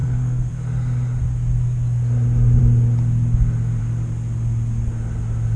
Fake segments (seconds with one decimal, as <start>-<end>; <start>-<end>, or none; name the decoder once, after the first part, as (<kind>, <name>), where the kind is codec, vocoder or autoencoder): 0.0-0.5 (codec, SNAC)